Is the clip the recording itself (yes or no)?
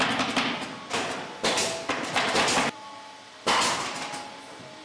yes